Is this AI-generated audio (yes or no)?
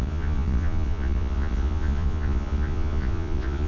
yes